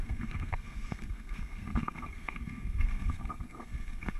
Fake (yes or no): yes